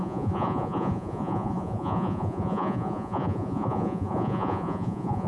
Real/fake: fake